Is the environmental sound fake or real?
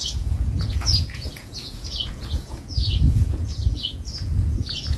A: fake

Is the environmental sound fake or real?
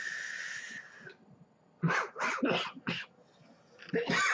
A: real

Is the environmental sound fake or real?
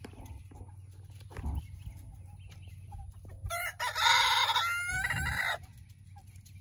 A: real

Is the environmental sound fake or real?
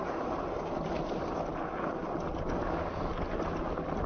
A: real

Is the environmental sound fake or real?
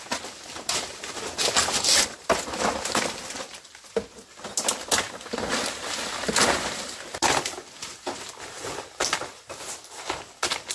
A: real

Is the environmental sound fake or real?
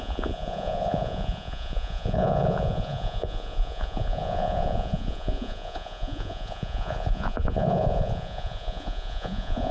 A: fake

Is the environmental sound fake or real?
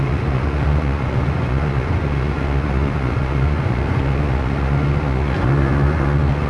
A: fake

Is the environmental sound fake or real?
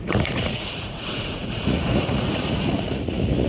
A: fake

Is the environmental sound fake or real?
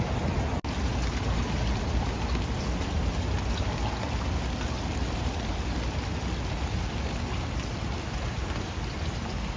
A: real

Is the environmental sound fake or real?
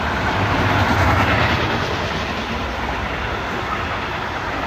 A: real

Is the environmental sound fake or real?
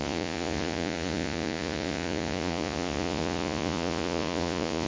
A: fake